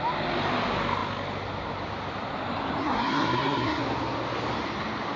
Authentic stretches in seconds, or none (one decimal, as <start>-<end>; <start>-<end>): 0.0-2.8; 3.8-5.2